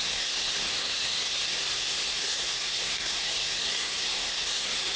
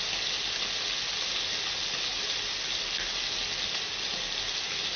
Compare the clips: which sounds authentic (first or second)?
second